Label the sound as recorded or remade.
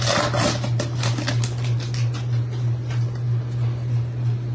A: recorded